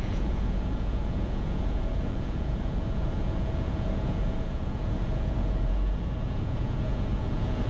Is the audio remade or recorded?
remade